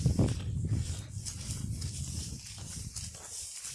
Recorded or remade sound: recorded